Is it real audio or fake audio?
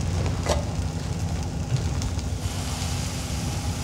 real